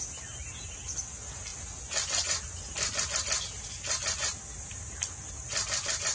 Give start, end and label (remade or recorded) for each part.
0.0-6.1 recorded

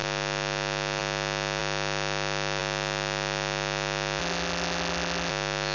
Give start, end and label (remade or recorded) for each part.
0.0-4.2 recorded; 4.2-5.3 remade; 5.3-5.7 recorded